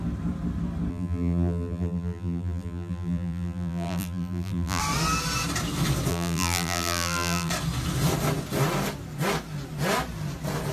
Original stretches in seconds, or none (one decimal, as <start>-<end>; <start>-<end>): 0.0-0.9; 4.8-6.1; 7.5-10.7